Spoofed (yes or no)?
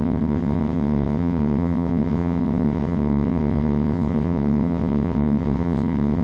yes